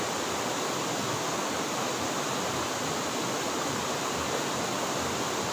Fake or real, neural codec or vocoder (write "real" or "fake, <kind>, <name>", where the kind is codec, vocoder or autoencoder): real